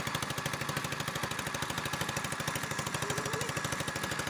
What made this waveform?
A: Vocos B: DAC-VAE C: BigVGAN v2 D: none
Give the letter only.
D